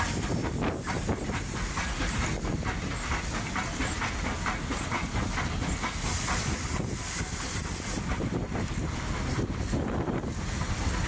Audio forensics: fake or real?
real